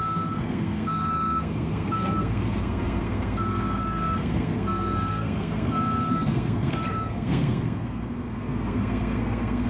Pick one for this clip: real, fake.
fake